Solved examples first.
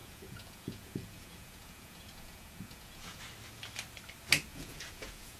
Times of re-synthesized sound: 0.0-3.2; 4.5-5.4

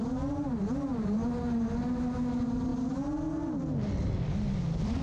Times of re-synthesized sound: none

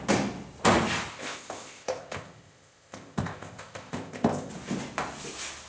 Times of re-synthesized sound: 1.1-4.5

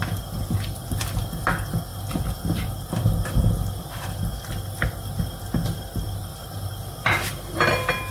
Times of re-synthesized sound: 6.3-7.3

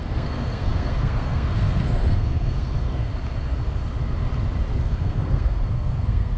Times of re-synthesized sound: 0.0-3.1; 4.8-6.4

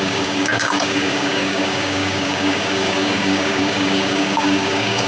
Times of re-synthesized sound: 0.0-5.1

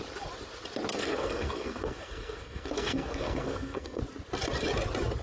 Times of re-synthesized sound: 0.9-4.0

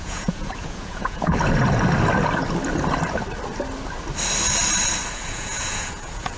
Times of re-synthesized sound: 0.0-1.3; 5.1-6.4